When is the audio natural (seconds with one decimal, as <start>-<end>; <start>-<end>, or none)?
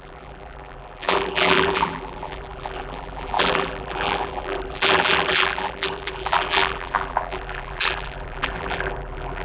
none